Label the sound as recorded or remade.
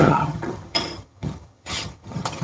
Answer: remade